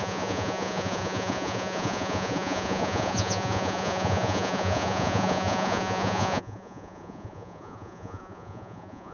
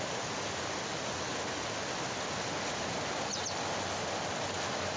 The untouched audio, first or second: second